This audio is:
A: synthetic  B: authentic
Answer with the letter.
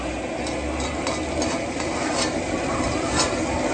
B